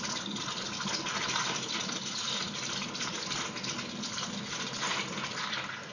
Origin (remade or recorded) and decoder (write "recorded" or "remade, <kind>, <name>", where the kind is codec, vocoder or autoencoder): recorded